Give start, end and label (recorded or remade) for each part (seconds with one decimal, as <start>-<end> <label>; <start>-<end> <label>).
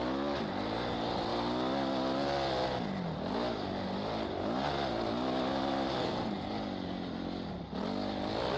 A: 0.0-6.0 recorded; 6.0-6.5 remade; 6.5-8.6 recorded